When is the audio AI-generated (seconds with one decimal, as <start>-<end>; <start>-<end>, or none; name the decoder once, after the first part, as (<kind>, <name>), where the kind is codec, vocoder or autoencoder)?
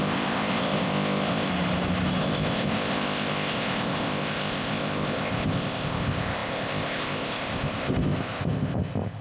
0.0-1.5 (codec, ZipCodec); 2.2-9.2